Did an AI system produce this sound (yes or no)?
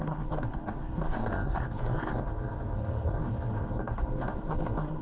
yes